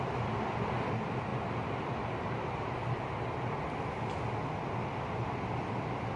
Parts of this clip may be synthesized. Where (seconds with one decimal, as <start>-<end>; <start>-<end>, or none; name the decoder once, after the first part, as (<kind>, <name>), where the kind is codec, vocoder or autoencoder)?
none